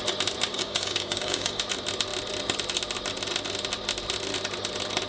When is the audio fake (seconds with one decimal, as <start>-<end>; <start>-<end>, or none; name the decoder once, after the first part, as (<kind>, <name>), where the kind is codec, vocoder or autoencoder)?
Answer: 0.5-1.6 (codec, DAC)